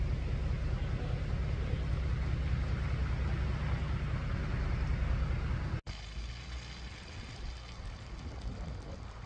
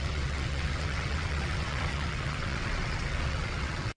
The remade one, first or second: second